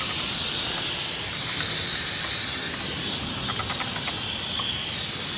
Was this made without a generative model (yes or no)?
yes